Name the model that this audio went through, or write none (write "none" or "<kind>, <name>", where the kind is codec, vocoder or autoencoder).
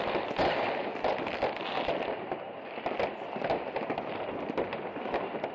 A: none